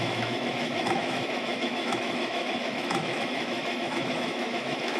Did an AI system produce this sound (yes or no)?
yes